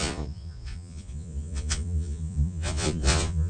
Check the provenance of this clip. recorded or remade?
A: remade